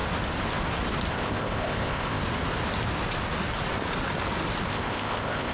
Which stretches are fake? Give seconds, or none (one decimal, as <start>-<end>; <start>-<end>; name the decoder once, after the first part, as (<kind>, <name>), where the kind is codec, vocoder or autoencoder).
1.1-2.2 (codec, ZipCodec); 4.7-5.5